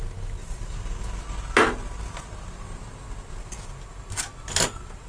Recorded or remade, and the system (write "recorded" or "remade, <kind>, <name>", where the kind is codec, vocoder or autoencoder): recorded